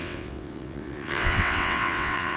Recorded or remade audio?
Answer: remade